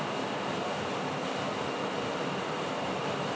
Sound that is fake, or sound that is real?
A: real